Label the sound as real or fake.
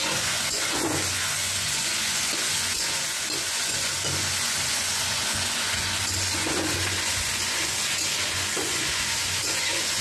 fake